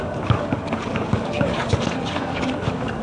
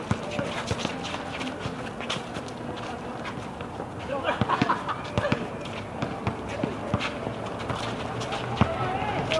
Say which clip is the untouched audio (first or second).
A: second